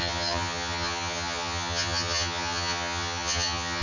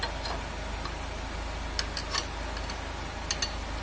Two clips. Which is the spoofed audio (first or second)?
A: first